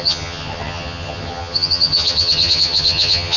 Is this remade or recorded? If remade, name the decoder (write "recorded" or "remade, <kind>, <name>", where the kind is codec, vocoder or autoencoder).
remade, vocoder, HiFi-GAN